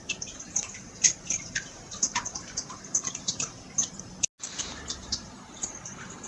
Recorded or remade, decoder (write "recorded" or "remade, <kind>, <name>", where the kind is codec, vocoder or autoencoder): recorded